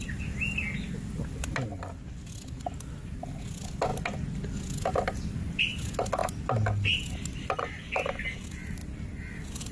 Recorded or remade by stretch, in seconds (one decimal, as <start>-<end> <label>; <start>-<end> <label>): 0.0-9.7 recorded